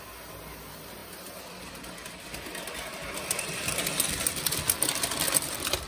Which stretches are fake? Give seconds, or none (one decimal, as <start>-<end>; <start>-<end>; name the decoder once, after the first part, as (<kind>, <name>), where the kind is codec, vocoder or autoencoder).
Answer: none